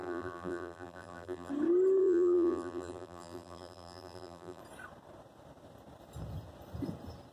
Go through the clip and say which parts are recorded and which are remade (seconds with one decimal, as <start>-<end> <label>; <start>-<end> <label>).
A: 0.0-1.5 remade; 1.5-2.0 recorded; 2.0-4.6 remade; 4.6-7.3 recorded